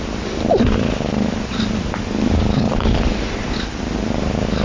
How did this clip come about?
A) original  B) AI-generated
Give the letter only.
A